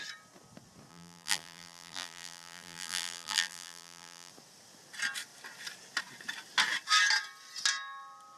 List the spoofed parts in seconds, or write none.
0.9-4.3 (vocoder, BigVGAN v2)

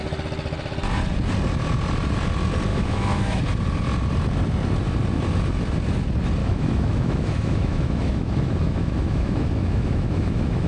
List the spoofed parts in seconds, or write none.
2.7-3.4 (autoencoder, DAC-VAE); 6.4-10.7

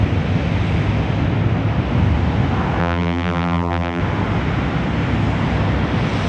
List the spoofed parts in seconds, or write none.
2.8-4.0 (vocoder, BigVGAN v2)

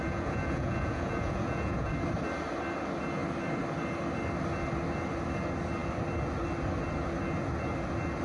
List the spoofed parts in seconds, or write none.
0.0-1.9 (vocoder, Vocos)

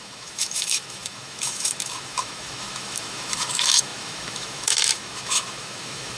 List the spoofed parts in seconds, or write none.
0.0-6.2 (autoencoder, DAC-VAE)

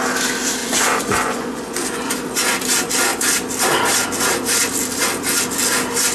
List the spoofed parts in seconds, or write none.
0.6-2.1 (vocoder, Vocos)

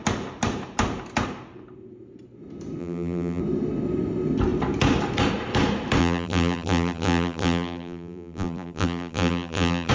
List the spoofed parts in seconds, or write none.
2.8-3.4 (vocoder, BigVGAN v2); 6.0-9.9

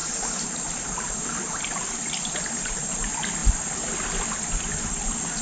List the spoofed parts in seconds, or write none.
none